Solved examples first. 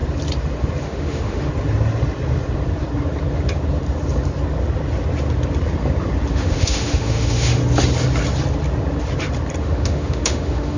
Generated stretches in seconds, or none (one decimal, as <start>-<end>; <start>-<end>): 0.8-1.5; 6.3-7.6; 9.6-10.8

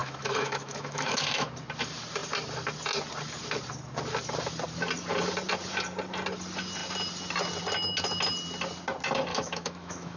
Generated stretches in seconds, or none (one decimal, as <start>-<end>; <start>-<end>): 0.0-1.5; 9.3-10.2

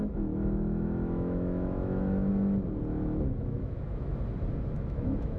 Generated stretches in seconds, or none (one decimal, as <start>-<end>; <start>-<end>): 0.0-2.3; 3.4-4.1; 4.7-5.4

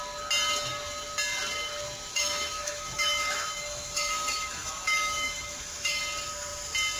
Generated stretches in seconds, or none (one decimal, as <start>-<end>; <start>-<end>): 2.1-6.0

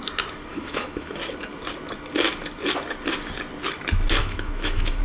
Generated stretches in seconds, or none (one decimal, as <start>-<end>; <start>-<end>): 0.5-1.2; 4.2-5.0

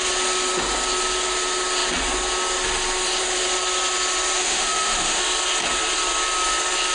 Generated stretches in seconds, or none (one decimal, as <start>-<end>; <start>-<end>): 4.4-5.2